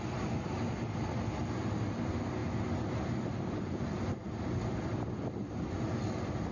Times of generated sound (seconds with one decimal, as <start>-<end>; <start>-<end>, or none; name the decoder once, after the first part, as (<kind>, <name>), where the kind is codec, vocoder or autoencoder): none